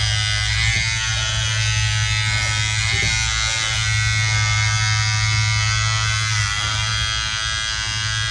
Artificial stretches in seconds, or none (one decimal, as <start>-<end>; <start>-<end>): none